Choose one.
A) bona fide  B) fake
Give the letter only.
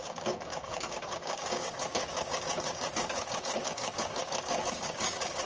B